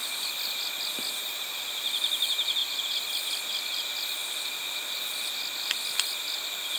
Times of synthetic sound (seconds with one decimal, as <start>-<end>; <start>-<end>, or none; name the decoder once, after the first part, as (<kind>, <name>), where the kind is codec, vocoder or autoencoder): none